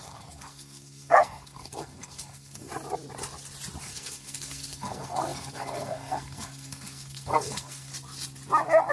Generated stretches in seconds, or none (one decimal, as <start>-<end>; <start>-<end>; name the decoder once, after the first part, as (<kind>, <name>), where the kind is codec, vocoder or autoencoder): 0.0-2.7 (codec, SNAC); 3.8-7.9